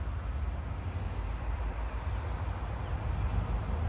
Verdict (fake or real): real